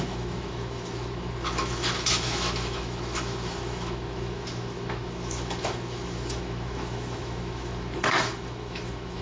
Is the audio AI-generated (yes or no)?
yes